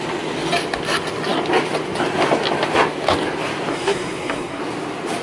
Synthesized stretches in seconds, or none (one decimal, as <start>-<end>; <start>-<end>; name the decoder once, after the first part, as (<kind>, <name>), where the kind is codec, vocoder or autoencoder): 3.7-4.6 (codec, SNAC)